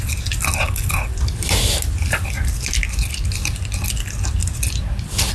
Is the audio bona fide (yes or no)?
yes